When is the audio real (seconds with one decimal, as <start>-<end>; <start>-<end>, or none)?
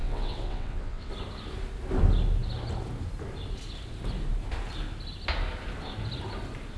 1.1-6.8